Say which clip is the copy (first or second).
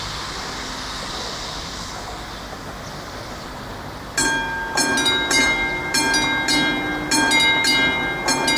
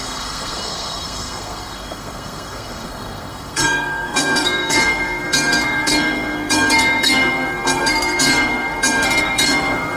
second